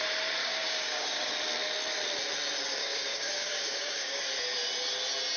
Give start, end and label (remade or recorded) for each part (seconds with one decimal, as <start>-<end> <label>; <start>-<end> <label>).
0.0-0.4 recorded; 0.4-1.3 remade; 1.3-2.8 recorded; 2.8-4.2 remade; 4.2-5.4 recorded